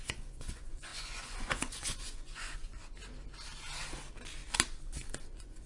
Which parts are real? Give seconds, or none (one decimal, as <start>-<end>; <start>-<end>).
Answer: 2.8-5.3